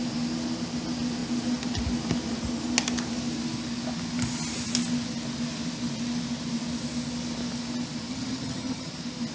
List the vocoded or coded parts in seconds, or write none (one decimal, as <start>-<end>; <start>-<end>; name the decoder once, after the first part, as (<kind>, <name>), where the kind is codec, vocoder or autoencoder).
8.1-8.9 (vocoder, HiFi-GAN)